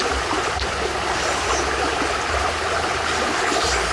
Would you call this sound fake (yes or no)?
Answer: no